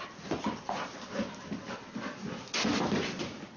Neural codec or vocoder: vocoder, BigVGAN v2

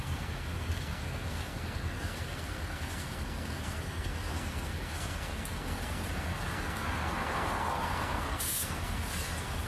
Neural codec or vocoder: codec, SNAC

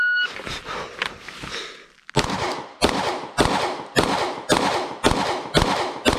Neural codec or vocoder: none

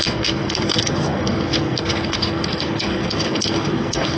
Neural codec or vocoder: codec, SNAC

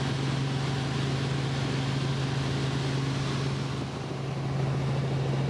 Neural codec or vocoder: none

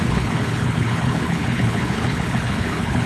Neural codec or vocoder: codec, HILCodec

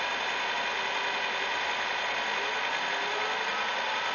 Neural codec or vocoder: none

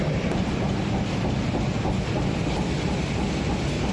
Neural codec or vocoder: vocoder, BigVGAN v2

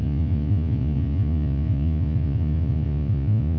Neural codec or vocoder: vocoder, Vocos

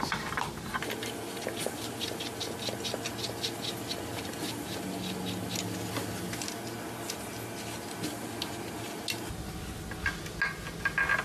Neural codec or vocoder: none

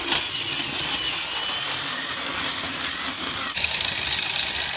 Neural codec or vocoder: none